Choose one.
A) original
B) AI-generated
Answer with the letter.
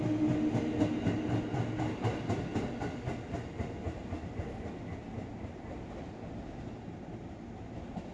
A